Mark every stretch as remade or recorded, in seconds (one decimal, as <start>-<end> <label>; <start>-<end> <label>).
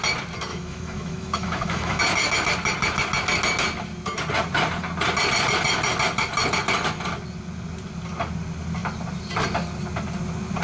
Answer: 0.0-0.5 recorded; 0.5-2.0 remade; 2.0-10.6 recorded